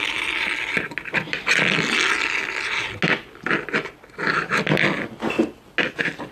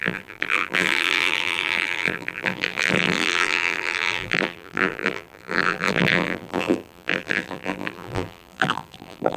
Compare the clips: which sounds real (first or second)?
first